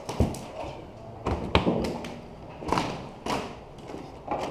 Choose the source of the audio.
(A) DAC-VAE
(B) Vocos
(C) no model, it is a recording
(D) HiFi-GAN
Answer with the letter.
C